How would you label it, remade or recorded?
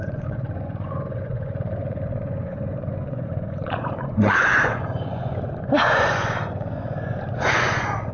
remade